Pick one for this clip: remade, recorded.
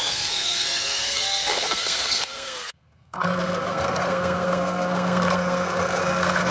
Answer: remade